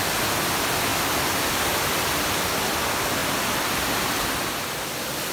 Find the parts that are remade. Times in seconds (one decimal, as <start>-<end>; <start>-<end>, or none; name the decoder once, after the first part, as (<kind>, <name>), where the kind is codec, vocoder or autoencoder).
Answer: none